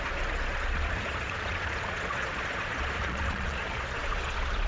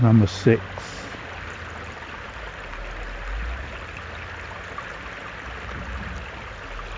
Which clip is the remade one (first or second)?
first